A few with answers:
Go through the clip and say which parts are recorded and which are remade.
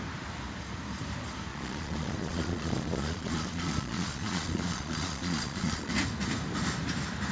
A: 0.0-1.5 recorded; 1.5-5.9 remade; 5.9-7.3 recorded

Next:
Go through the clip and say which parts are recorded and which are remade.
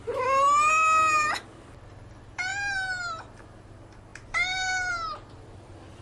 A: 0.0-6.0 recorded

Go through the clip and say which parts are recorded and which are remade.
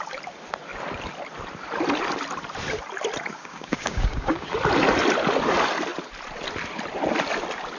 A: 0.0-3.3 recorded; 3.3-4.5 remade; 4.5-7.8 recorded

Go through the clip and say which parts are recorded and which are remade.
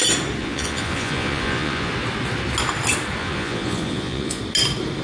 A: 0.0-0.4 recorded; 0.4-1.9 remade; 1.9-3.2 recorded; 3.2-4.4 remade; 4.4-5.0 recorded